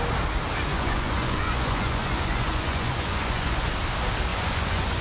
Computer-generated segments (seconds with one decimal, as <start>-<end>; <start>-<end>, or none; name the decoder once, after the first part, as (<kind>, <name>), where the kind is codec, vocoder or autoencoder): 0.7-3.7 (vocoder, Vocos); 4.3-5.0